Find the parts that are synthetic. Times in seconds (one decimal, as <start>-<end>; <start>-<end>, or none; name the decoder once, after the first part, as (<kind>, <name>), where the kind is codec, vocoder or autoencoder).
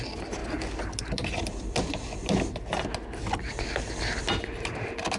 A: none